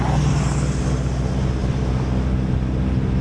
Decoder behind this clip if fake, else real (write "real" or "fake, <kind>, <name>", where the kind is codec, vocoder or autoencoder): real